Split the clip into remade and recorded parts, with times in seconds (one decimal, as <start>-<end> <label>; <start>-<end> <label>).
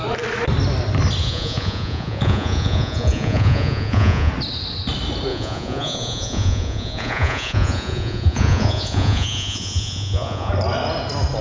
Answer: 0.0-1.2 recorded; 1.2-4.3 remade; 4.3-5.3 recorded; 5.3-10.5 remade; 10.5-11.4 recorded